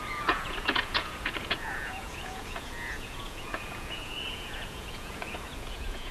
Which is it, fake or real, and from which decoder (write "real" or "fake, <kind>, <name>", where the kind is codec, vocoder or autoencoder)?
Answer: fake, vocoder, Vocos